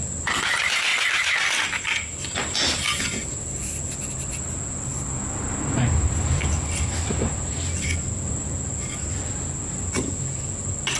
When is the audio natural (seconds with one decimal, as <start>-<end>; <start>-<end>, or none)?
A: 0.0-11.0